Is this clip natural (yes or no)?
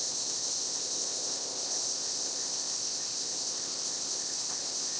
no